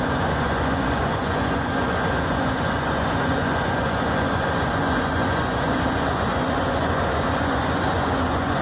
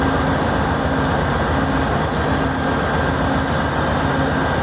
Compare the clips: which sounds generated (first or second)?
first